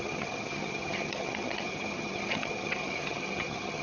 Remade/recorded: remade